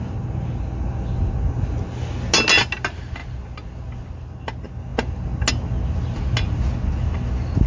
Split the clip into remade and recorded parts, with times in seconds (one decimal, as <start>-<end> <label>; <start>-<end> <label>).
0.0-7.7 recorded

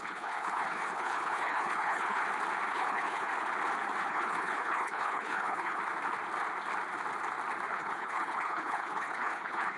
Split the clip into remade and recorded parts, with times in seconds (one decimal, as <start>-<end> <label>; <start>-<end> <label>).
0.0-2.2 remade; 2.2-2.7 recorded; 2.7-3.3 remade; 3.3-4.0 recorded; 4.0-5.8 remade; 5.8-7.7 recorded; 7.7-9.8 remade

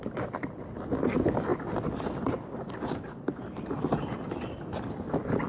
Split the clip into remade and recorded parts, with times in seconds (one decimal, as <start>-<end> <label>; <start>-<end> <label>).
0.0-5.5 recorded

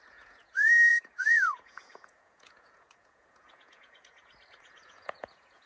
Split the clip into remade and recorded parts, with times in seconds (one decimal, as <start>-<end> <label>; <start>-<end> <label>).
0.0-5.7 remade

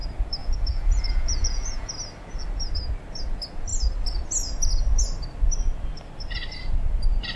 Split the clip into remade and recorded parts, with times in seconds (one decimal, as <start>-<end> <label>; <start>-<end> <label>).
0.0-0.4 recorded; 0.4-1.9 remade; 1.9-7.4 recorded

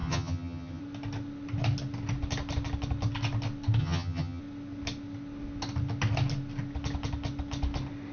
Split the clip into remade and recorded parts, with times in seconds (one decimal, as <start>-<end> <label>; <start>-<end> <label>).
0.0-0.8 remade; 0.8-3.8 recorded; 3.8-4.4 remade; 4.4-8.1 recorded

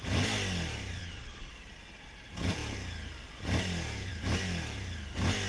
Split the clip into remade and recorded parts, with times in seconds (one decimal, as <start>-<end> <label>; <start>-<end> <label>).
0.0-1.0 recorded; 1.0-1.5 remade; 1.5-5.5 recorded

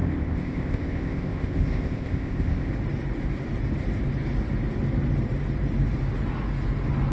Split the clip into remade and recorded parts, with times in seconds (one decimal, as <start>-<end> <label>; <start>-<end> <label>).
0.0-2.7 remade; 2.7-7.1 recorded